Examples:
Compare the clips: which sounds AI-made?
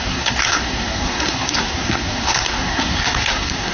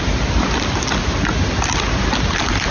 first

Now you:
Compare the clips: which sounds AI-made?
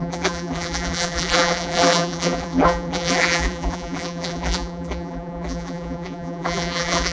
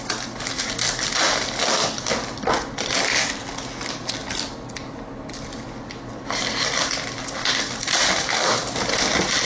first